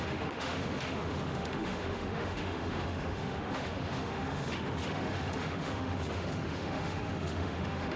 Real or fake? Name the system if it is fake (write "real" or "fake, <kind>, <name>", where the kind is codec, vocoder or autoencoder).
fake, autoencoder, DAC-VAE